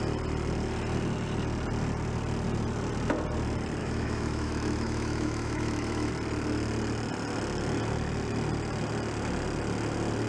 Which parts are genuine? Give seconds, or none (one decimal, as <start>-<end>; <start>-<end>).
0.0-3.8; 6.1-10.3